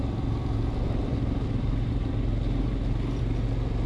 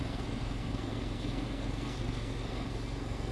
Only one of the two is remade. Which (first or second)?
second